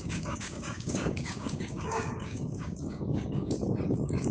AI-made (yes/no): yes